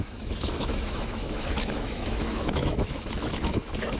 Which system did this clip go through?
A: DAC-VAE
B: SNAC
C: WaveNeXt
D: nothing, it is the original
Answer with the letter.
A